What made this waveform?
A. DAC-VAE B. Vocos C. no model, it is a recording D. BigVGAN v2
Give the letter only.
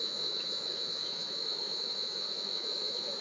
A